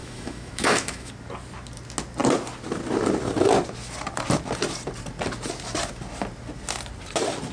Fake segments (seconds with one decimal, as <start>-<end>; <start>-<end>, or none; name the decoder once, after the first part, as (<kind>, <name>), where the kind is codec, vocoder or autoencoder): 0.0-1.1 (autoencoder, DAC-VAE)